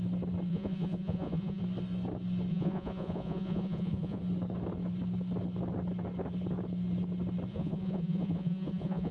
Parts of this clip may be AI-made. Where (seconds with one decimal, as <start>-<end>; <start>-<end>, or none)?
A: 0.5-1.6; 2.5-4.2; 7.5-9.1